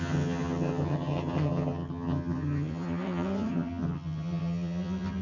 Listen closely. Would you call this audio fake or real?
fake